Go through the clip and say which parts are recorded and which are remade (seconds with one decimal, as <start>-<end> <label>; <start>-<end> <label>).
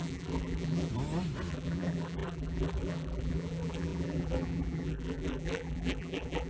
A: 0.0-0.9 remade; 0.9-1.5 recorded; 1.5-6.5 remade